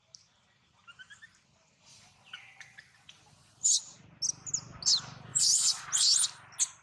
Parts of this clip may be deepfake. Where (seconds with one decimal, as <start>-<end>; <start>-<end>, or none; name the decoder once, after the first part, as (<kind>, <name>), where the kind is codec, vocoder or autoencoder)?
1.9-3.8 (vocoder, Vocos); 5.3-5.8